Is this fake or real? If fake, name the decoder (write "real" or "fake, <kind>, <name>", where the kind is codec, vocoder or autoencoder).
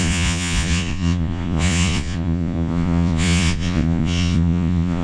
fake, vocoder, Vocos